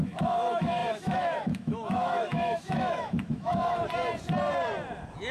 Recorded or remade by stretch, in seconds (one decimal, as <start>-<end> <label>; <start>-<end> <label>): 0.0-3.8 remade; 3.8-5.3 recorded